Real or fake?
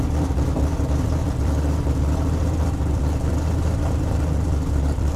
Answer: fake